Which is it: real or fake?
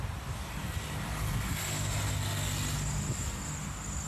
real